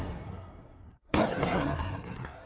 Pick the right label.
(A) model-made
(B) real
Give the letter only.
A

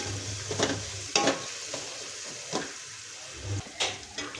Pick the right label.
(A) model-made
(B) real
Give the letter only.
B